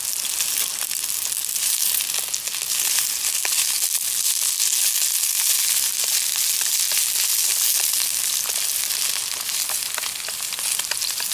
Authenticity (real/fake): real